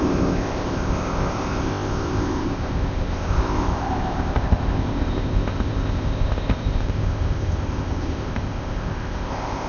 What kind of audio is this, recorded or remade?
remade